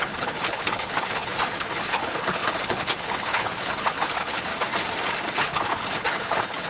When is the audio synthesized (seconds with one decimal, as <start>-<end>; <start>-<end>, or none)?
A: 0.0-4.5; 5.3-6.7

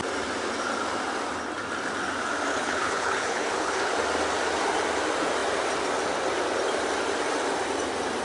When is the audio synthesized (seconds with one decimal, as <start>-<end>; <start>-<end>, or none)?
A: 2.5-3.9

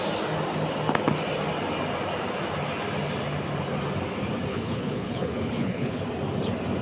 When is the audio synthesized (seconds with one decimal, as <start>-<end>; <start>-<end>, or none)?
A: 4.5-6.0

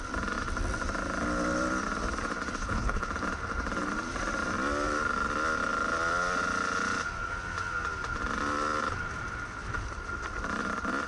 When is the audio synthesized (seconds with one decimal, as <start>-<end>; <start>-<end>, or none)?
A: 2.6-3.1

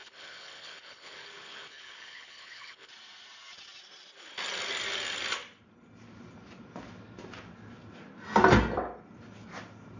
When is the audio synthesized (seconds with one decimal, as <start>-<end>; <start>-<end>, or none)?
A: 0.0-2.9

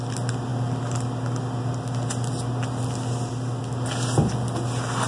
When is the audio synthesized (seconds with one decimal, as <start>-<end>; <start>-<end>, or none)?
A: none

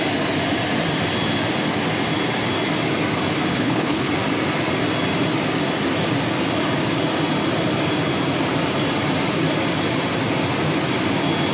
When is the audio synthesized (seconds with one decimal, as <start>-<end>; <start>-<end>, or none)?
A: 3.5-4.1

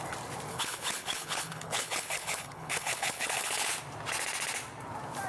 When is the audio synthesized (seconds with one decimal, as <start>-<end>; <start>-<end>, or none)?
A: 0.5-3.7